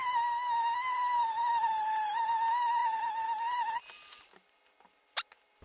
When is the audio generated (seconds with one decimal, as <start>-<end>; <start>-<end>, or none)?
0.0-2.3; 2.8-3.6